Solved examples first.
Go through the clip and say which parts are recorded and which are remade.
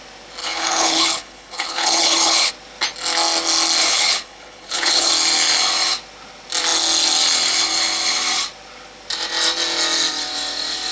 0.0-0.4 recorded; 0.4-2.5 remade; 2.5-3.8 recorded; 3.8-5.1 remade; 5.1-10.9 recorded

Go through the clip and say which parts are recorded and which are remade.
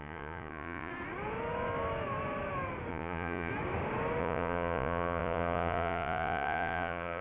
0.0-0.9 remade; 0.9-2.9 recorded; 2.9-3.5 remade; 3.5-4.2 recorded; 4.2-7.2 remade